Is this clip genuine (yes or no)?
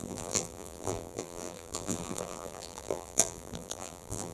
no